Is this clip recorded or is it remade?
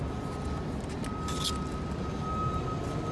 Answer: recorded